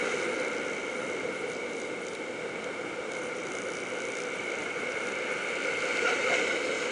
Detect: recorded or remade recorded